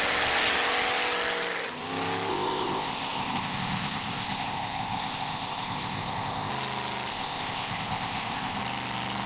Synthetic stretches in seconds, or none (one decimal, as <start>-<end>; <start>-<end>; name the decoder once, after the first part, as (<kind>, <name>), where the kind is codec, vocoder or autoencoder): 2.3-6.5 (codec, ZipCodec); 7.1-8.6